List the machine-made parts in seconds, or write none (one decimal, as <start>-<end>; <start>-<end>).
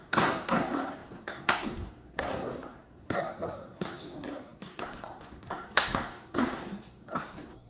0.0-7.7